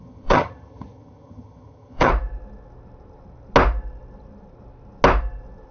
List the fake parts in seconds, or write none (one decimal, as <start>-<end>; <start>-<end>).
0.0-2.1